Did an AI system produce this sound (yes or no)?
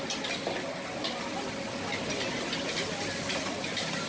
no